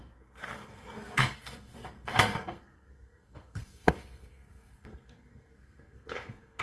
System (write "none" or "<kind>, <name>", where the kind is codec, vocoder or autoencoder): codec, SNAC